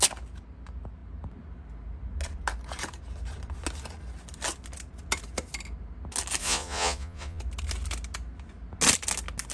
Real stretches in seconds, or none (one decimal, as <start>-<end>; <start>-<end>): 0.0-6.4; 7.4-9.5